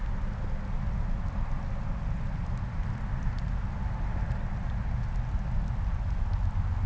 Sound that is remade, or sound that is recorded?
recorded